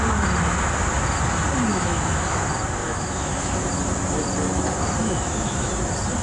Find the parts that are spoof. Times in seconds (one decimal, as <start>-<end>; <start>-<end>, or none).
1.7-2.4; 2.8-3.7; 5.0-5.7